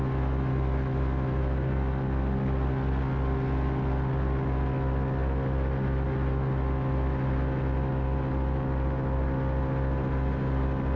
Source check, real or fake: real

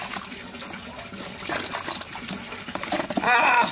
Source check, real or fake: real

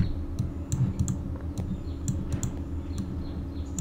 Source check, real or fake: real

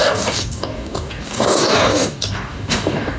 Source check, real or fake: fake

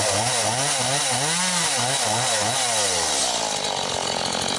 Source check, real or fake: real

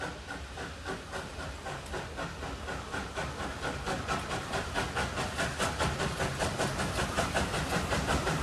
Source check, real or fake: real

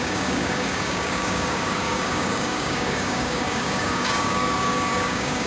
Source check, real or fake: fake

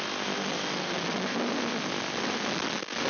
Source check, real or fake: real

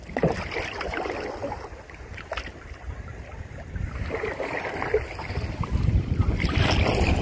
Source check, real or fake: real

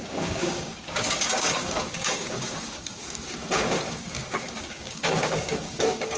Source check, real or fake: fake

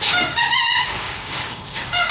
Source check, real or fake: fake